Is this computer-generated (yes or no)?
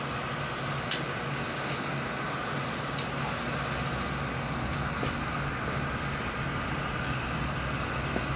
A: no